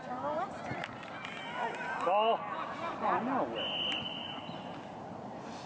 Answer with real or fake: real